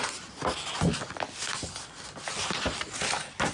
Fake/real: real